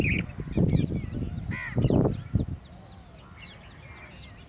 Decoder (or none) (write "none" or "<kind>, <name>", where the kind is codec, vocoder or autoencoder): none